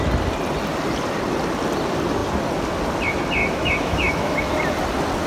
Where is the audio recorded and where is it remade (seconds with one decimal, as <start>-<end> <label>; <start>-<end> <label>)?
0.0-3.4 recorded; 3.4-4.5 remade; 4.5-5.3 recorded